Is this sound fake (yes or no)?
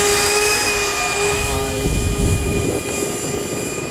no